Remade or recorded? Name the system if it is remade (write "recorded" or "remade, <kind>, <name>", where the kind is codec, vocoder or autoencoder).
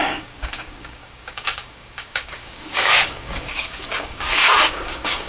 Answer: remade, codec, DAC